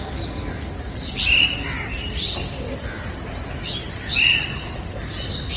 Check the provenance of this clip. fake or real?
real